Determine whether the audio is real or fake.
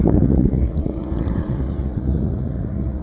fake